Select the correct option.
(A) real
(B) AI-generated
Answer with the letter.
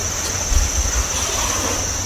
A